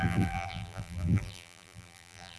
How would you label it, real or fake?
fake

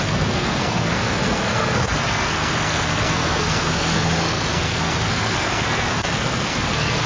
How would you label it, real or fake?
fake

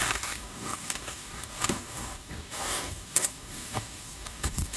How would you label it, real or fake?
fake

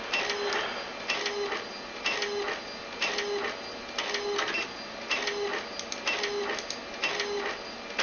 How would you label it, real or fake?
real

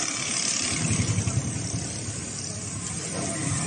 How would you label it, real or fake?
real